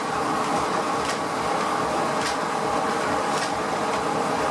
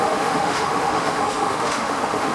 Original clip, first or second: first